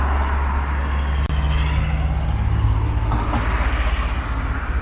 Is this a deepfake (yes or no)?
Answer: no